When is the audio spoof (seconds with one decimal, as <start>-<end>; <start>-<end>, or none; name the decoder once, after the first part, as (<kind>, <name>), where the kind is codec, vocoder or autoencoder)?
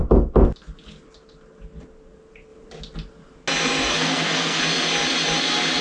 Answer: 3.9-4.6 (codec, SNAC)